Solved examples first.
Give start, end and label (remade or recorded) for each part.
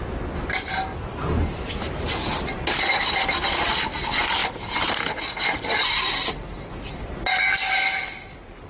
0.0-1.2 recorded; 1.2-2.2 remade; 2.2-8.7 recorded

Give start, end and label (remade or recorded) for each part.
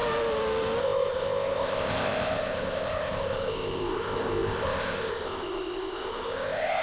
0.0-0.8 recorded; 0.8-6.8 remade